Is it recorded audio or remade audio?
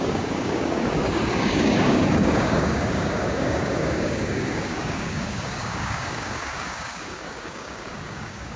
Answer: remade